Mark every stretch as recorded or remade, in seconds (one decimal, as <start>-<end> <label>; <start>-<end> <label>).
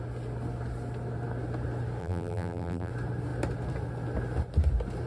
0.0-2.0 recorded; 2.0-2.9 remade; 2.9-5.1 recorded